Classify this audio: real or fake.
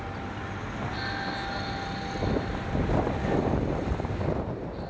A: real